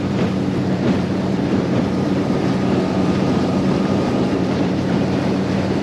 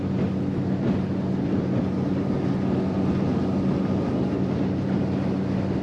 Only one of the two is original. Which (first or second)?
second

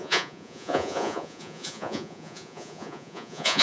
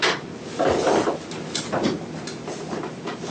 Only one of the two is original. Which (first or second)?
second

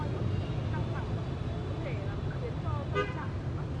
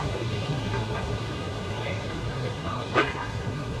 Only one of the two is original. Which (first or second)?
first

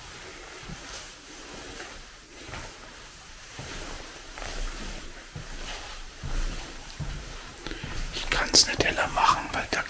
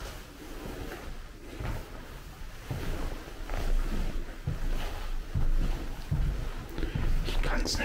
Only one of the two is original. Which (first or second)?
second